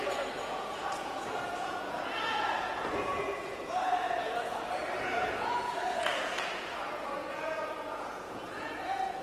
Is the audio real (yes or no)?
no